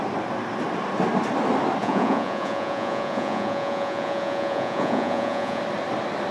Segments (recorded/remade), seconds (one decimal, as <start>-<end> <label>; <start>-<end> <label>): 0.0-1.8 recorded; 1.8-5.6 remade; 5.6-6.3 recorded